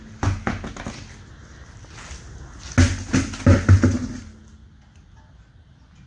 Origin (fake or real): real